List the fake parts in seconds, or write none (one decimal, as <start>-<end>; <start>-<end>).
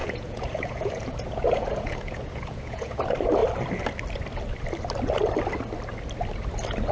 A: 0.0-3.0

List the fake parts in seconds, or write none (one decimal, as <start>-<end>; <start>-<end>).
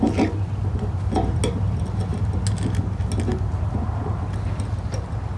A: none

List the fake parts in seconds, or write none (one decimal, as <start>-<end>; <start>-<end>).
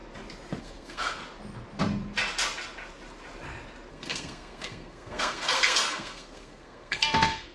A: 0.6-1.2; 3.9-7.5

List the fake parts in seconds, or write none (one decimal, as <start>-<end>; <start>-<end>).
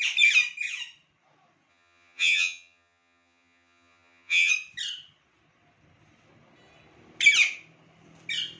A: 1.7-4.5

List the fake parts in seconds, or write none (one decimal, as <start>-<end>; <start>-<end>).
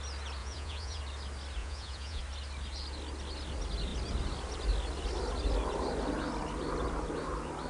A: 0.4-1.0; 1.6-2.2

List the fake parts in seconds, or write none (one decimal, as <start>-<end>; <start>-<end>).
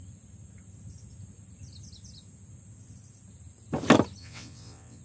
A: 4.2-5.0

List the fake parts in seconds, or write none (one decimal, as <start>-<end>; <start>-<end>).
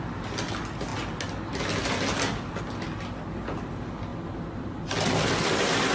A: 4.1-4.8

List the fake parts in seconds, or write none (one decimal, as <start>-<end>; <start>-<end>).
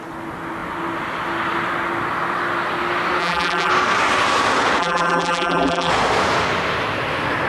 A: 3.2-3.7; 4.8-5.9